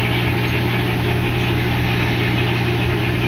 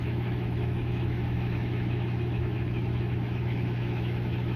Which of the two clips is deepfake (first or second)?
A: second